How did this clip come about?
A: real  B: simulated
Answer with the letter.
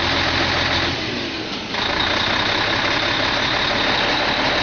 A